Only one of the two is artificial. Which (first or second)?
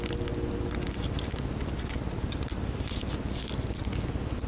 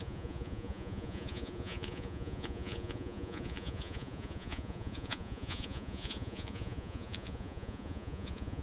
second